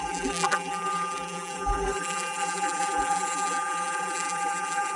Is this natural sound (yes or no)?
no